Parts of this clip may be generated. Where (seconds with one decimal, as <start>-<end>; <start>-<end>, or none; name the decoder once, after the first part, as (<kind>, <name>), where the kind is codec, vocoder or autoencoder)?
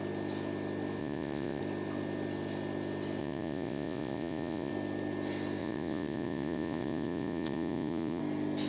1.0-1.6 (vocoder, Vocos); 3.2-4.7; 5.6-8.2